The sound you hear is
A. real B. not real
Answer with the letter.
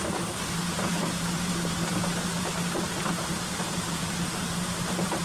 B